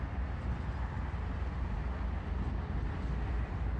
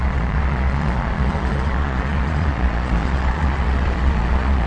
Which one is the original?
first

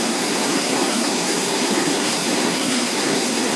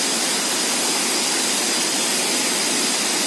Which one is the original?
second